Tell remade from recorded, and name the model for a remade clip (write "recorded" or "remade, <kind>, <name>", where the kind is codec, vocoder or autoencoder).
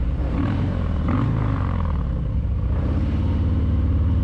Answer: remade, vocoder, BigVGAN v2